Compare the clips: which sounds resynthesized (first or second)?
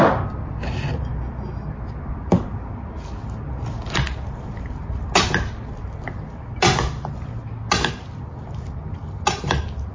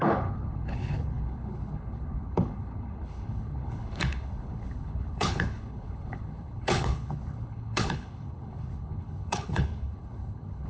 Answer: second